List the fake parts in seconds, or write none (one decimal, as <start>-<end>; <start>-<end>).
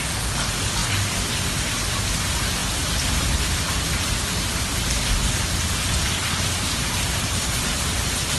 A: 2.6-3.1